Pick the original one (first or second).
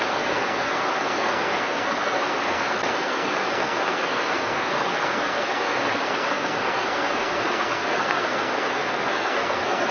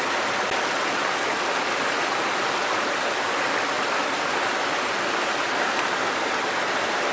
second